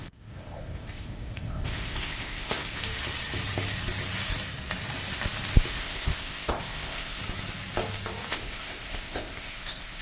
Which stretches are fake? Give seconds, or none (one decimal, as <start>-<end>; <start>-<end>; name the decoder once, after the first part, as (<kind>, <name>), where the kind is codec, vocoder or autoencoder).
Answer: 0.0-2.8 (codec, ZipCodec); 5.7-7.2; 8.3-10.0